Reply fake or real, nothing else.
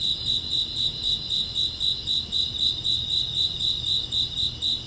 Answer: real